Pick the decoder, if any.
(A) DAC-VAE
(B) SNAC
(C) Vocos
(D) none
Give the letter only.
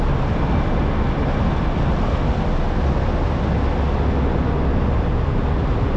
D